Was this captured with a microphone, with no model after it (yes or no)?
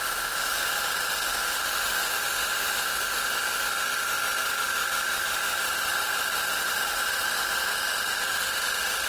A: no